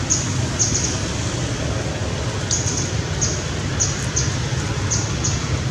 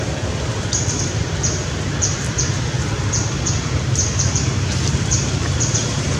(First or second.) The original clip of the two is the first